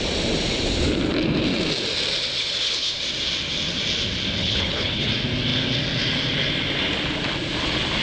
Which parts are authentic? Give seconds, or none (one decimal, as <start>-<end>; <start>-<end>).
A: 0.0-2.4; 3.0-4.4; 5.1-8.0